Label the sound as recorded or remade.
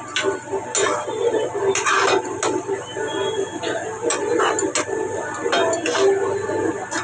recorded